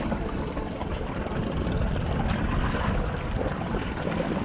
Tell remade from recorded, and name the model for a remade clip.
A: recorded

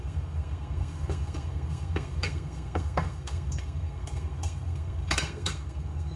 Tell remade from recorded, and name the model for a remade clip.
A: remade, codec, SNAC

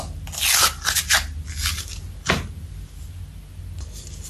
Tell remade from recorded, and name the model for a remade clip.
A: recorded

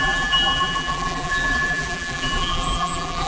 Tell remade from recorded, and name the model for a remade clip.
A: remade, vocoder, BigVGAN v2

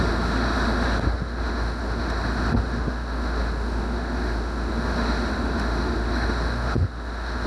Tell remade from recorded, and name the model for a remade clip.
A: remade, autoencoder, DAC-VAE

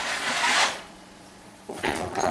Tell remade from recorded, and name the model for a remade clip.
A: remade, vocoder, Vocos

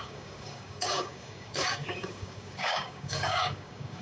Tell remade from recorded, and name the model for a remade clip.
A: remade, codec, DAC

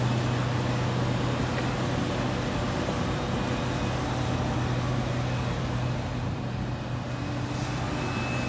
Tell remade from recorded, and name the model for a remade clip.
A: recorded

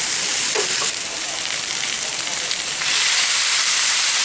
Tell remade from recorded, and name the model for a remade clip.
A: remade, vocoder, BigVGAN v2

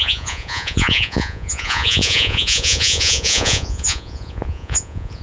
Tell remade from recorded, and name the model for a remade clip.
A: remade, vocoder, Vocos